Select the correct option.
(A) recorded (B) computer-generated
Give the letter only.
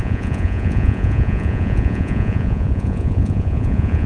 B